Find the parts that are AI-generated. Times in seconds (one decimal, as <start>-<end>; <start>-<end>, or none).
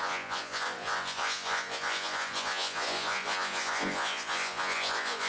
0.0-5.3